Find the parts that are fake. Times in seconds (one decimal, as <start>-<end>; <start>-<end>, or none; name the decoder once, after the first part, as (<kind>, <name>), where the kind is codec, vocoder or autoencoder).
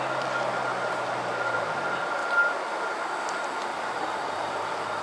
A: none